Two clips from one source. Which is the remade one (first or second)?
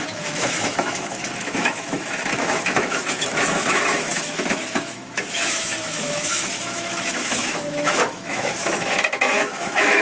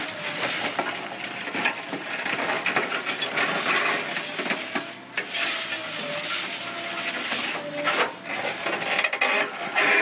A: first